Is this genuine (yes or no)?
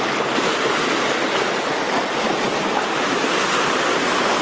yes